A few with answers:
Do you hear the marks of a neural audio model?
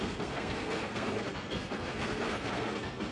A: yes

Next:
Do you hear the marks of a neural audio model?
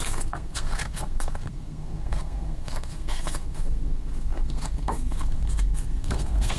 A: yes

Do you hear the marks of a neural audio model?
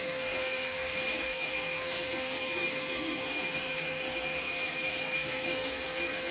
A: yes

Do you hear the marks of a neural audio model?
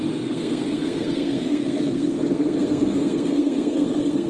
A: yes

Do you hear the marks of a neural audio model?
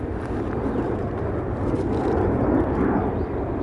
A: no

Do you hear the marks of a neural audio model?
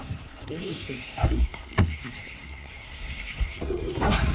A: yes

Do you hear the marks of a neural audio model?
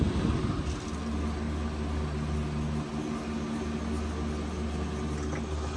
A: no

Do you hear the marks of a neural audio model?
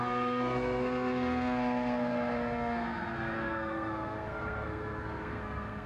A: yes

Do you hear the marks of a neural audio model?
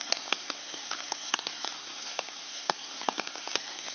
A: yes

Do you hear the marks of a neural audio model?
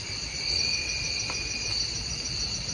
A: no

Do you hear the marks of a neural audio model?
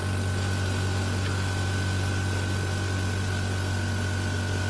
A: no